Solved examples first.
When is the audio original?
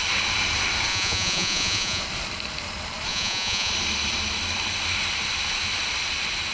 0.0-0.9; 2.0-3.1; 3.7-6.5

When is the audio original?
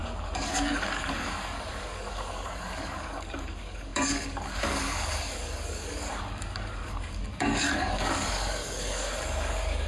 none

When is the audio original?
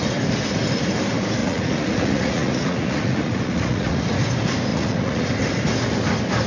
0.0-1.4; 4.0-4.7; 5.3-6.5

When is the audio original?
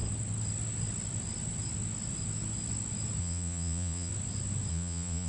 0.0-3.2; 4.1-4.7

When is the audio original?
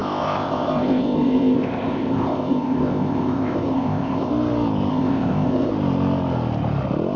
4.3-4.9; 5.7-7.2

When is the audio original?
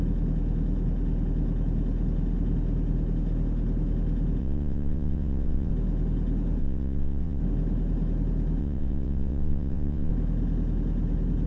0.0-4.4; 5.7-6.6; 7.4-8.6; 10.1-11.5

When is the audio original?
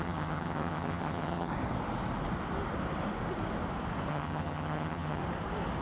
1.5-4.1; 5.2-5.8